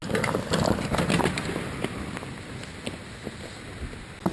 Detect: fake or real real